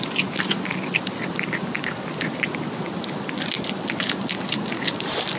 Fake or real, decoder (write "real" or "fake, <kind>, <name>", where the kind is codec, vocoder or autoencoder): real